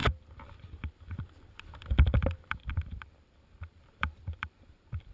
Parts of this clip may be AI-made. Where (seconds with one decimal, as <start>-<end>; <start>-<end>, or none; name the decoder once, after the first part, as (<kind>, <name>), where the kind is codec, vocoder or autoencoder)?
0.0-5.1 (vocoder, BigVGAN v2)